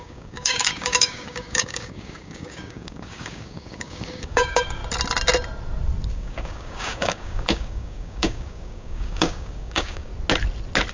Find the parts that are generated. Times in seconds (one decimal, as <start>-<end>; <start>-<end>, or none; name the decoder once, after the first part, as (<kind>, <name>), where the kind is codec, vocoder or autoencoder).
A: 0.0-4.8 (codec, DAC); 6.1-10.1